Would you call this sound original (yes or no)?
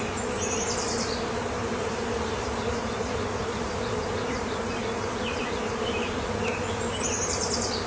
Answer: no